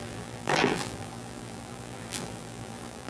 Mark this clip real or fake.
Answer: fake